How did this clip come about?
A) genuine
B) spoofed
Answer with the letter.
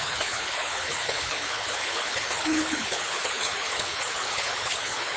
B